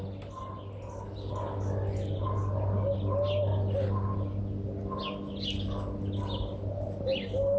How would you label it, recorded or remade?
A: recorded